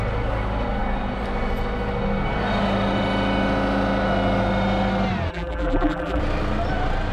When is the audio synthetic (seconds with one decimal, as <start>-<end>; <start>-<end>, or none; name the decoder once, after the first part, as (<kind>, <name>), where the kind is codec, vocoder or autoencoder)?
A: 5.3-6.2 (vocoder, BigVGAN v2)